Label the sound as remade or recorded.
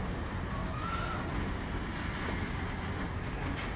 recorded